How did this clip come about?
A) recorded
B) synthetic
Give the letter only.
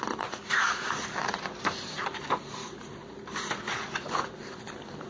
A